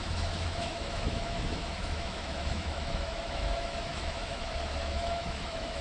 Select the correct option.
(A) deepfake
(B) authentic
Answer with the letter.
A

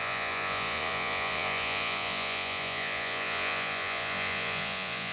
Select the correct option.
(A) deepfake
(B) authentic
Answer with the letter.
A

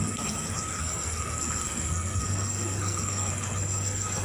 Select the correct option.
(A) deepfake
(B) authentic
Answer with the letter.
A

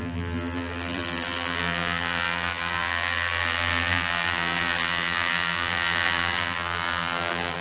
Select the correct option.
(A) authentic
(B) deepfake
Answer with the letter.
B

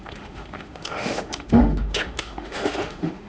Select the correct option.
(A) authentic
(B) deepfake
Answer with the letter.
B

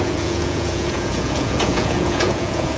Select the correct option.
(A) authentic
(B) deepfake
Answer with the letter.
B